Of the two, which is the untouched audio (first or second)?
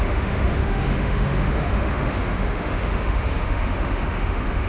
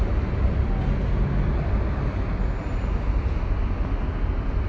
second